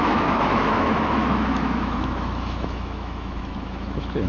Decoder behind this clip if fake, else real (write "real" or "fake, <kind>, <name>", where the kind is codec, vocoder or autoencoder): fake, autoencoder, DAC-VAE